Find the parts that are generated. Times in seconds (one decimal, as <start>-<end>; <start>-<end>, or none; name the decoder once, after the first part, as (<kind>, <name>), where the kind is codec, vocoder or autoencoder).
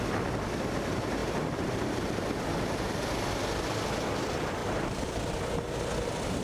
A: 1.2-2.2 (vocoder, BigVGAN v2); 4.6-5.2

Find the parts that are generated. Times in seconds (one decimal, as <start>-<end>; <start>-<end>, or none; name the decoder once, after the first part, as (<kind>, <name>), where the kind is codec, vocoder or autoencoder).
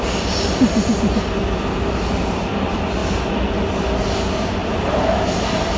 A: 4.6-5.8 (vocoder, BigVGAN v2)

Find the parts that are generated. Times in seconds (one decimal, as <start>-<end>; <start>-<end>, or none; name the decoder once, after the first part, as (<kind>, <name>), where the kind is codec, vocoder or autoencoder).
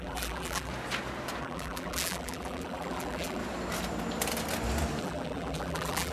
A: 0.0-0.7 (vocoder, BigVGAN v2); 1.4-3.4; 5.0-6.1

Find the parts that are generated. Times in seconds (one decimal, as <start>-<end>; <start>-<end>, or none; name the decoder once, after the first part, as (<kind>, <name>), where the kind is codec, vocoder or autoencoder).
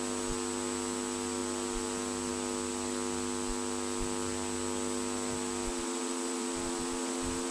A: 5.7-7.5 (vocoder, BigVGAN v2)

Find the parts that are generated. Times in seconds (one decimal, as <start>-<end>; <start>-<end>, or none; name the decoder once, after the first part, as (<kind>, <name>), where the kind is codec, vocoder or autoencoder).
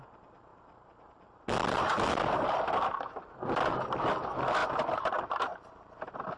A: none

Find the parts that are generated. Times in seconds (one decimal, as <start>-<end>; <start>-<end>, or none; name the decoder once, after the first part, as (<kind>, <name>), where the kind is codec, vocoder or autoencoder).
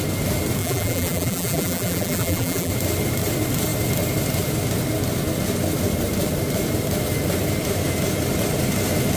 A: 0.6-2.7 (vocoder, BigVGAN v2)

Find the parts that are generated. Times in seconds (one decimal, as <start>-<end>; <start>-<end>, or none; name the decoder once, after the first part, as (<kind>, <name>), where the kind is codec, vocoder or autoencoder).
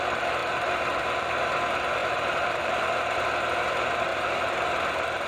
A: 2.0-3.3 (vocoder, BigVGAN v2); 4.1-5.3